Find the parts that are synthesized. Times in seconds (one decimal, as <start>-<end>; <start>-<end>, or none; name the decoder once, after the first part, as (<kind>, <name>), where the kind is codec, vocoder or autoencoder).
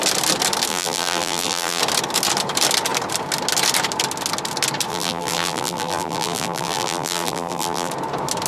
0.7-1.8 (vocoder, BigVGAN v2); 4.9-7.9